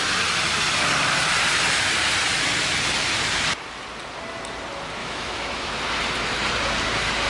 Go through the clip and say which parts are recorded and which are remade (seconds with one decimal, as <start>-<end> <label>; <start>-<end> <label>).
0.0-5.0 recorded; 5.0-5.8 remade; 5.8-7.3 recorded